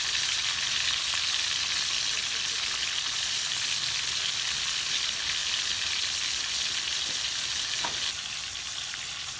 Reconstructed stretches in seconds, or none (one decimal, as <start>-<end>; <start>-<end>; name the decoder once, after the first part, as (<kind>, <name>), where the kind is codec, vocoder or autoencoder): none